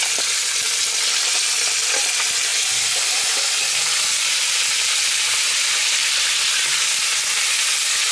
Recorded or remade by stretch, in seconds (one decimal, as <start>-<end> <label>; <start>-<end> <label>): 0.0-0.8 remade; 0.8-2.5 recorded; 2.5-7.2 remade; 7.2-8.1 recorded